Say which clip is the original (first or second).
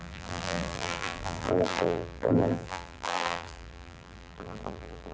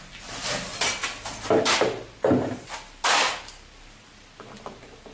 second